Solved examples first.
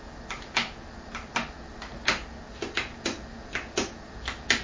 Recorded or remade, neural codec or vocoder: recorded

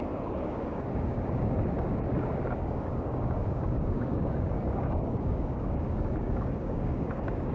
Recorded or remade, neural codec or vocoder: remade, codec, DAC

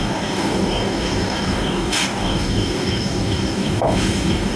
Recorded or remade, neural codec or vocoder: remade, codec, DAC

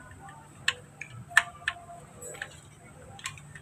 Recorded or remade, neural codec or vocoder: recorded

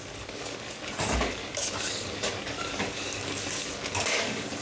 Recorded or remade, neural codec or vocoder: remade, codec, DAC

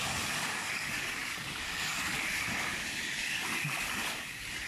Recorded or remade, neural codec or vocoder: remade, codec, DAC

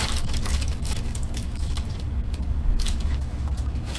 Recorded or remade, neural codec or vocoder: remade, codec, DAC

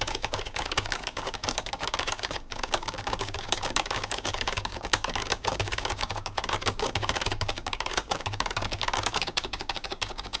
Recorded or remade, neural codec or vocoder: remade, codec, DAC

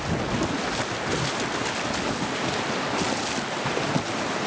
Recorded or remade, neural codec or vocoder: recorded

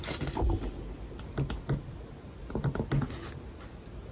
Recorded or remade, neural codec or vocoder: recorded